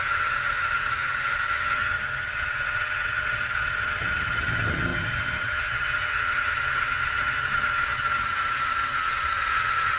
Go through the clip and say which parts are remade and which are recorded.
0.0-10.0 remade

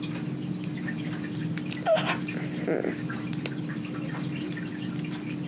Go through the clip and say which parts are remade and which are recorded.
0.0-5.5 recorded

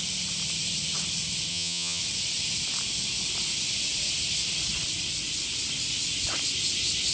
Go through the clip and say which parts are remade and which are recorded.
0.0-1.5 recorded; 1.5-2.0 remade; 2.0-7.1 recorded